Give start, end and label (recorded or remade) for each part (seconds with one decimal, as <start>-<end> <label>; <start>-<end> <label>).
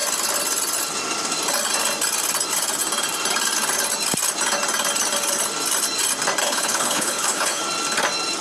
0.0-6.4 recorded; 6.4-7.6 remade; 7.6-8.4 recorded